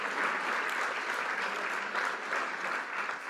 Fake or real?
real